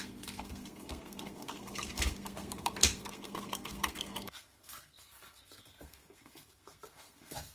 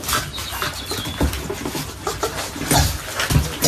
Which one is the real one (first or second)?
second